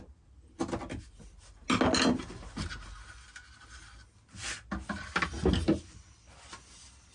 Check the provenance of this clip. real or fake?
real